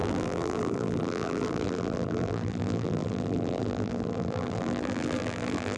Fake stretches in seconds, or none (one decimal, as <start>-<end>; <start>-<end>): 0.0-5.8